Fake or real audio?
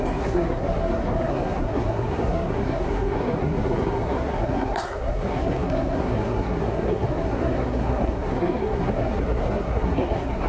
fake